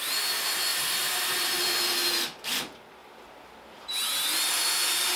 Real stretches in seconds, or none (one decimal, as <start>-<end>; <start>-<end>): 0.0-0.7; 1.5-3.0; 4.7-5.2